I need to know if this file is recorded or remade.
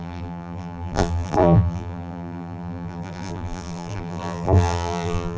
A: remade